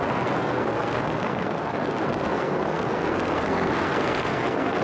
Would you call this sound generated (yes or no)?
yes